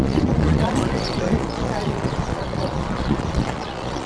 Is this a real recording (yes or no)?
no